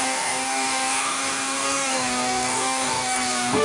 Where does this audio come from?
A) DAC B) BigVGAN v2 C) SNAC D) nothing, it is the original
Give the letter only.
A